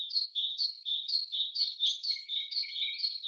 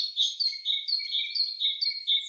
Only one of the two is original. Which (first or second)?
second